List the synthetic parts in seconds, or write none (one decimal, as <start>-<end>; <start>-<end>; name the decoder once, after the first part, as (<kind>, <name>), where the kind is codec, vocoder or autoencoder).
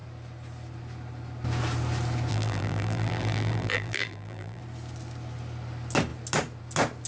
2.3-4.6 (vocoder, BigVGAN v2)